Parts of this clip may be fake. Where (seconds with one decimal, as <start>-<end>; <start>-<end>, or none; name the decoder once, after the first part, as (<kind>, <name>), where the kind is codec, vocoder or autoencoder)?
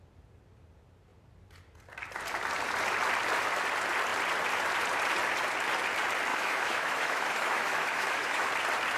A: 6.3-8.5 (autoencoder, DAC-VAE)